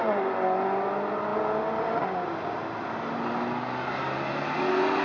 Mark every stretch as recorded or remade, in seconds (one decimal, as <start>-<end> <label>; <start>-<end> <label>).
0.0-5.0 recorded